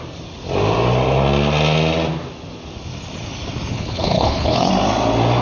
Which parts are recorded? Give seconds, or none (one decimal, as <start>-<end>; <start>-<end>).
0.0-3.7; 4.7-5.4